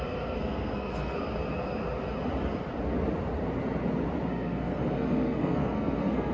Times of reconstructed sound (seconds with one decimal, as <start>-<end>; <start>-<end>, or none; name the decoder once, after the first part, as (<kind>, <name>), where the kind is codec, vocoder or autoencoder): 0.0-1.2 (codec, SNAC); 4.3-6.3